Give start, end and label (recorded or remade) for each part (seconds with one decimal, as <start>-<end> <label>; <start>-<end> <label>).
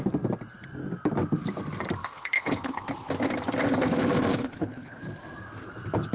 0.0-2.0 recorded; 2.0-2.8 remade; 2.8-4.3 recorded; 4.3-5.0 remade; 5.0-6.1 recorded